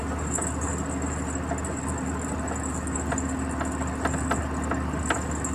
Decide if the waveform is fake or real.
real